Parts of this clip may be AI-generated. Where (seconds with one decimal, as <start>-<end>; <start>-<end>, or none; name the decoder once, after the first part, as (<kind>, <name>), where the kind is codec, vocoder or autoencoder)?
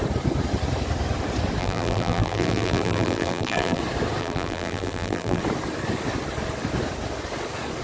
1.6-3.8 (vocoder, BigVGAN v2); 4.2-5.4